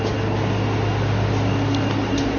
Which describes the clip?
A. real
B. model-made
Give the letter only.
A